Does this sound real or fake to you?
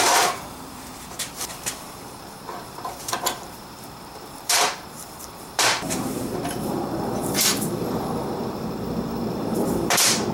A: fake